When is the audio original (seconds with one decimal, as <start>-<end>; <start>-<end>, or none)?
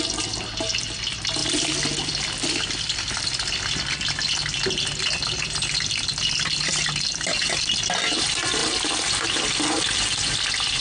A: 0.0-10.8